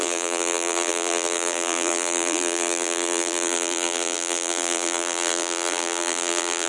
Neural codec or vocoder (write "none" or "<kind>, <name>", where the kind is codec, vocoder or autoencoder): vocoder, BigVGAN v2